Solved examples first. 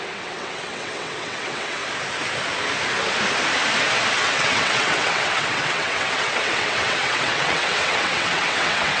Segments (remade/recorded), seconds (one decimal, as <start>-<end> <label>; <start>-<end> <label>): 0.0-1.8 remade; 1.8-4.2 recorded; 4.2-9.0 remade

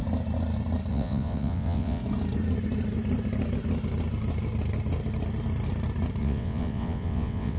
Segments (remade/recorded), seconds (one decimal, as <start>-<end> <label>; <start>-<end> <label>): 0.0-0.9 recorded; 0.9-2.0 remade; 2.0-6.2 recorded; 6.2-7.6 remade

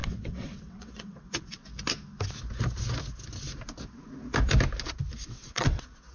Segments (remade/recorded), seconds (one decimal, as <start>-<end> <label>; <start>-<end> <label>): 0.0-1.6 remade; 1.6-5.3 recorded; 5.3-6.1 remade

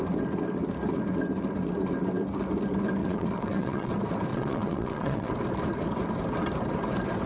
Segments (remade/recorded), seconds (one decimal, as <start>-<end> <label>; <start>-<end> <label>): 0.0-3.0 recorded; 3.0-3.9 remade; 3.9-4.3 recorded; 4.3-5.3 remade; 5.3-7.3 recorded